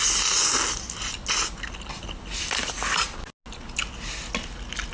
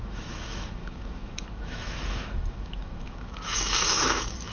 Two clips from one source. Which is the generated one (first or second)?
second